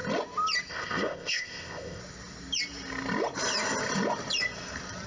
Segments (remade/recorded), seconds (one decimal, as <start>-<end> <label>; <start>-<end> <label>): 0.0-0.7 recorded; 0.7-2.0 remade; 2.0-5.1 recorded

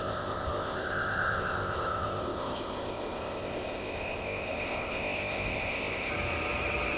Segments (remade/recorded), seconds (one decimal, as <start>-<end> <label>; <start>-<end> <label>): 0.0-6.1 remade; 6.1-7.0 recorded